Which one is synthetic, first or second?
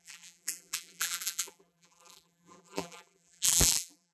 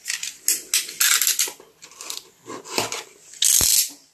first